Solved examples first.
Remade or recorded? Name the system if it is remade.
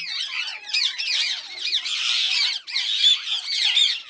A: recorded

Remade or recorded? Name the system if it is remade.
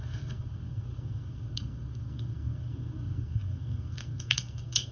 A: remade, codec, SNAC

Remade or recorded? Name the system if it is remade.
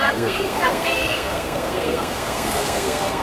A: remade, codec, SNAC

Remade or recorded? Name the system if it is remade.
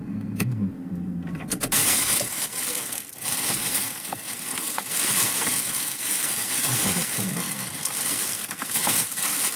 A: remade, codec, SNAC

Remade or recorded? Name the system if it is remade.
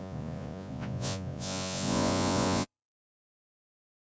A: remade, vocoder, Vocos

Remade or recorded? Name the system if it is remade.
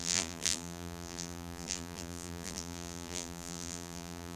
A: remade, vocoder, BigVGAN v2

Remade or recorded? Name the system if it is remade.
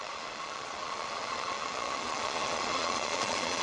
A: remade, vocoder, Vocos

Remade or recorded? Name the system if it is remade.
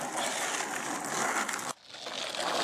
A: recorded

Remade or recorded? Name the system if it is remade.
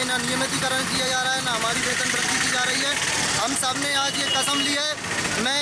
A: recorded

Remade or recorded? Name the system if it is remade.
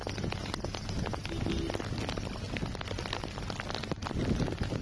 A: recorded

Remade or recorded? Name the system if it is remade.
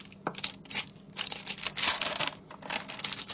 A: recorded